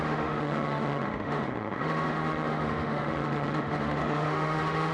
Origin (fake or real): fake